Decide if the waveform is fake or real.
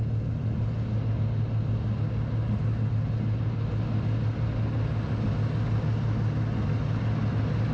real